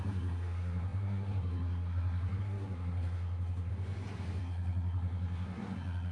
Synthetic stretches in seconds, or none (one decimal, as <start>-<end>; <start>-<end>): 0.0-3.7; 4.4-6.1